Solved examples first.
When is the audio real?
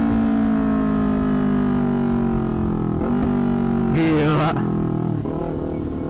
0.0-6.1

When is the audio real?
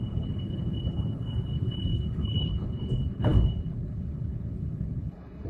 none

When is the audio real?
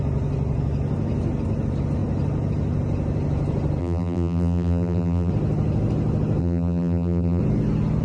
0.0-3.8; 5.3-6.4; 7.4-8.0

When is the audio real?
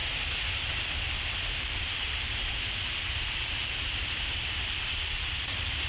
0.0-0.6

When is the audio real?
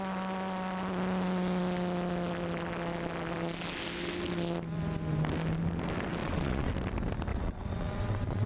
0.0-6.2; 6.7-7.3